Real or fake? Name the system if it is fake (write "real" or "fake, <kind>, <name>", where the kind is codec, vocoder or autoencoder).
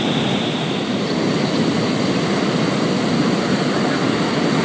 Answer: real